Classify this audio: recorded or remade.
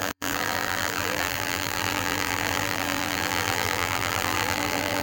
remade